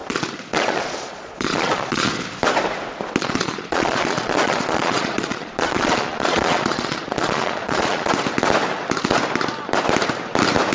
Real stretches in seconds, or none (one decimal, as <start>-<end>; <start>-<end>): 2.1-3.2; 8.1-10.7